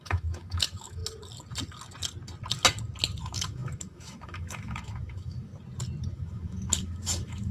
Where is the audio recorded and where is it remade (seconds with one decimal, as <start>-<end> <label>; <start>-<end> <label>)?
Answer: 0.0-1.0 remade; 1.0-3.2 recorded; 3.2-5.5 remade; 5.5-6.1 recorded; 6.1-7.5 remade